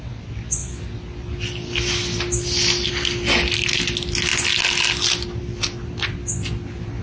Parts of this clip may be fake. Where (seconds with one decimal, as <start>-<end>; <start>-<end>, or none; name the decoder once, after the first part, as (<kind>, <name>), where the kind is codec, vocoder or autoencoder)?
none